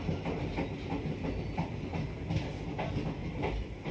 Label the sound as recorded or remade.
recorded